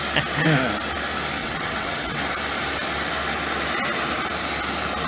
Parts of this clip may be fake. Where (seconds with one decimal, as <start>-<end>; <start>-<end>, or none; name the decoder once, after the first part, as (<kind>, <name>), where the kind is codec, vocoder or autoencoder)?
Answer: 1.4-2.2 (vocoder, WaveNeXt)